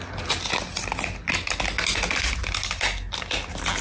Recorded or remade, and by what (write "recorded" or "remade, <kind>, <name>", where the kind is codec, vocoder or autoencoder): recorded